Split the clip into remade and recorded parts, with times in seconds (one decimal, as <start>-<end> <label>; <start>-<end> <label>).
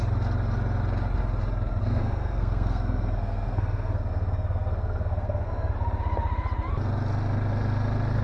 0.0-1.8 recorded; 1.8-5.7 remade; 5.7-8.2 recorded